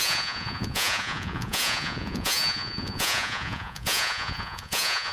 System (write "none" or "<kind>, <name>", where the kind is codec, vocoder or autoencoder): vocoder, Vocos